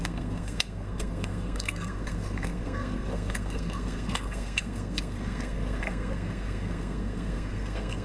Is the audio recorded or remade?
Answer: remade